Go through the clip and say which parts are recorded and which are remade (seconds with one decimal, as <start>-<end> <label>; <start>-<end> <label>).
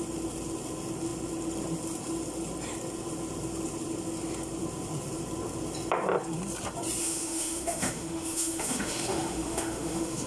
0.0-7.0 recorded; 7.0-10.3 remade